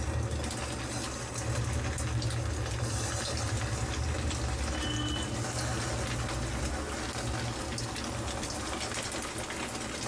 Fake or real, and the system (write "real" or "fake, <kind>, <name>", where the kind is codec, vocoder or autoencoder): real